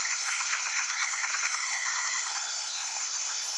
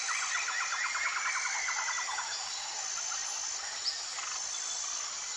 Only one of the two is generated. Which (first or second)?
first